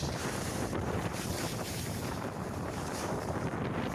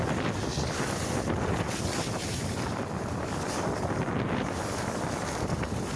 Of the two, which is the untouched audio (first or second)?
second